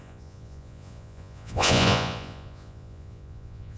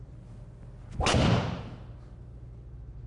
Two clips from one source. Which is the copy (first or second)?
first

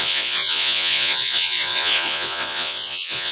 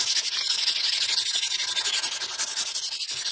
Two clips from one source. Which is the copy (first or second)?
first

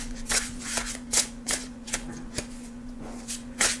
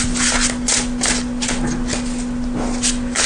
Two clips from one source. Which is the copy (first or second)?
first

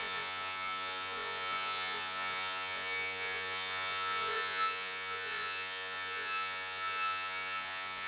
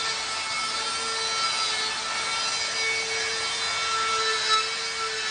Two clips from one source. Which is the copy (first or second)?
first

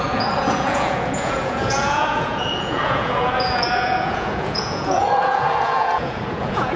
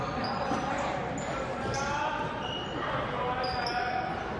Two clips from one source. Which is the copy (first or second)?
first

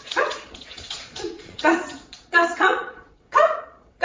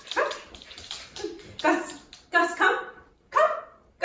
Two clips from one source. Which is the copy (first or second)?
first